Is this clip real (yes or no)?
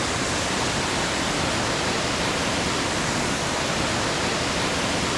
yes